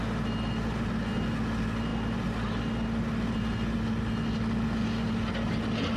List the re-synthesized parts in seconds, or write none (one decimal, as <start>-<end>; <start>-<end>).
none